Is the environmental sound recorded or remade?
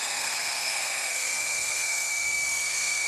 remade